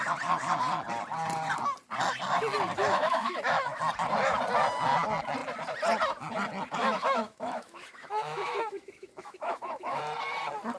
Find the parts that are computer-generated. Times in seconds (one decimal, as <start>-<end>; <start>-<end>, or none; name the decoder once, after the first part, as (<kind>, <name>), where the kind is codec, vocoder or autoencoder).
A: 2.8-3.8 (autoencoder, DAC-VAE); 6.8-10.0